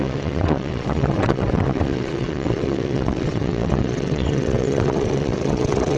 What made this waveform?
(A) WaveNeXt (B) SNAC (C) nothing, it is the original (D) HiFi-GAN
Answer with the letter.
A